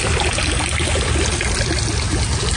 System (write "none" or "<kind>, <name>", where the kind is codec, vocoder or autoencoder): none